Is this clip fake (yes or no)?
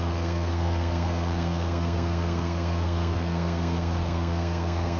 yes